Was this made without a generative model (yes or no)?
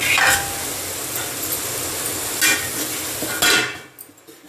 yes